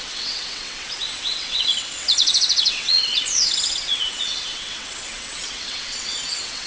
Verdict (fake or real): fake